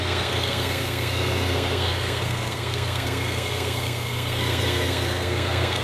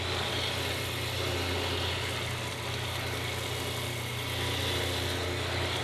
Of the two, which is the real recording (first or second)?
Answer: second